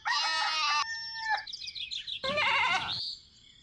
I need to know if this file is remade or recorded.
recorded